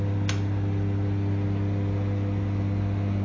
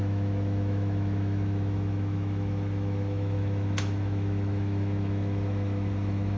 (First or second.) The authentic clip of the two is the first